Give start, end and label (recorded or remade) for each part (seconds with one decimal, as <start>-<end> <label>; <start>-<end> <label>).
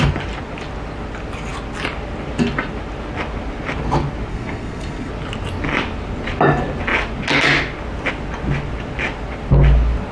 0.0-4.3 recorded; 4.3-5.1 remade; 5.1-10.1 recorded